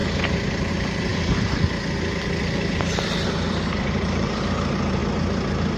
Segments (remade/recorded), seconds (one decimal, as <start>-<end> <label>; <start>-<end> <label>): 0.0-0.7 recorded; 0.7-1.1 remade; 1.1-3.6 recorded; 3.6-5.0 remade; 5.0-5.8 recorded